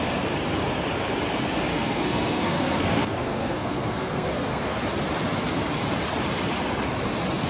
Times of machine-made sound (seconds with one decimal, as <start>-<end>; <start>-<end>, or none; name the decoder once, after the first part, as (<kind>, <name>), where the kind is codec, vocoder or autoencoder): 1.7-4.8 (codec, SNAC)